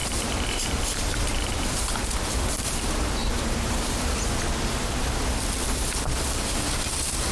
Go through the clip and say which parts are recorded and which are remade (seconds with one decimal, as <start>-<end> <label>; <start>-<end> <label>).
0.0-2.5 remade; 2.5-3.2 recorded; 3.2-4.2 remade; 4.2-7.3 recorded